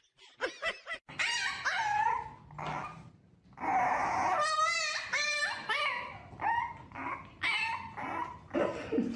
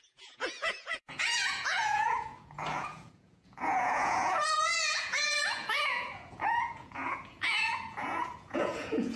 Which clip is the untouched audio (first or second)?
first